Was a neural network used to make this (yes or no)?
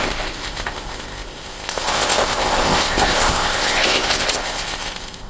yes